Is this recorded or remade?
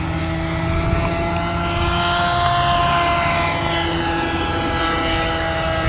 recorded